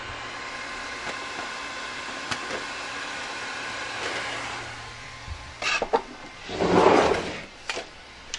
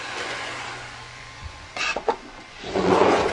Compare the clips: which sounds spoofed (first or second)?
second